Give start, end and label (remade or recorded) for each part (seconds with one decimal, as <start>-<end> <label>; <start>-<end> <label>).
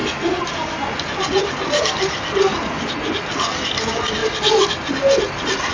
0.0-5.7 recorded